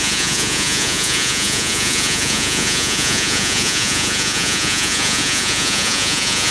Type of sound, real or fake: fake